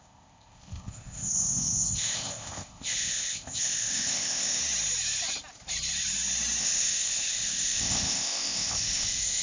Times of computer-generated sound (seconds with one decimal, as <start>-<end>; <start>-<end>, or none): 0.0-4.6; 6.6-9.4

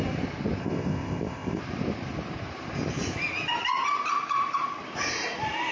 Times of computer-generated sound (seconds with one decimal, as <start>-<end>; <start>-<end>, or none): 0.6-1.6

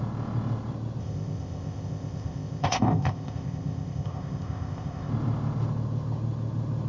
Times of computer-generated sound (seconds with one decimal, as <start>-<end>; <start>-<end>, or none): 1.0-5.1

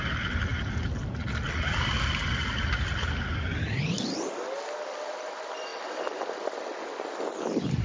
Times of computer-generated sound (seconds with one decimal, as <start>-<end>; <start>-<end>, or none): none

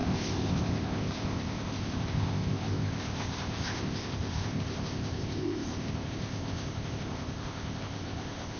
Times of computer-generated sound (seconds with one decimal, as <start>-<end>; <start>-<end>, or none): 0.0-8.6

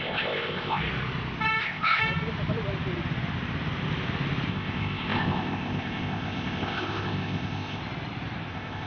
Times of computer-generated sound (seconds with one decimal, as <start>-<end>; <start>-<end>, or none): 0.0-0.8; 1.6-2.0; 4.5-7.8; 8.5-8.9